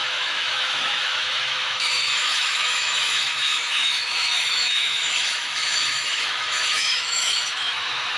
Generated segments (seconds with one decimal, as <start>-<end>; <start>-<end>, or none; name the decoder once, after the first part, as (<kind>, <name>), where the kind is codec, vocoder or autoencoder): 0.0-8.2 (autoencoder, DAC-VAE)